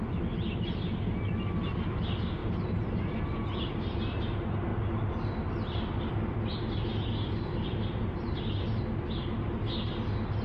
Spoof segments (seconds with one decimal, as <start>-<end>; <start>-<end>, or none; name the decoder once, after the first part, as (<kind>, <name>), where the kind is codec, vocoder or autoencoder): 2.4-3.7 (vocoder, BigVGAN v2); 7.5-8.8